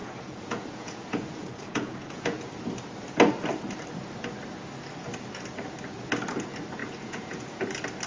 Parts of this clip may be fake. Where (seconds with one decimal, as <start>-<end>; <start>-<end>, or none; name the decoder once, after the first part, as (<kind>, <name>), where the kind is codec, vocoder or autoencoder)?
0.0-2.5 (vocoder, Vocos); 6.8-7.6